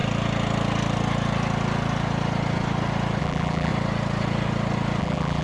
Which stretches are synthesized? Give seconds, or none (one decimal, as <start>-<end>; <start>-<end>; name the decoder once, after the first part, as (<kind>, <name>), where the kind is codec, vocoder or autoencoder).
3.2-3.7 (vocoder, BigVGAN v2); 5.0-5.4